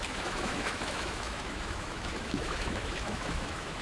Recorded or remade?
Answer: remade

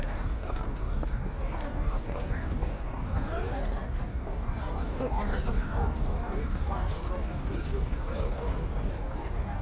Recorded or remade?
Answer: remade